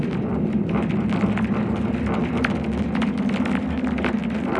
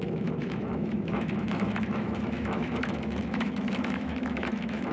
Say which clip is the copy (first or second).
second